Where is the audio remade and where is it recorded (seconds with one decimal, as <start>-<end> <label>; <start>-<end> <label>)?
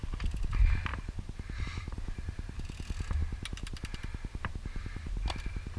0.0-5.8 recorded